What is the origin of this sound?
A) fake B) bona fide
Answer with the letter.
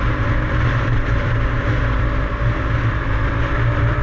A